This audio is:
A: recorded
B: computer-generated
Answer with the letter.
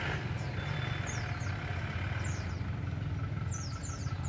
A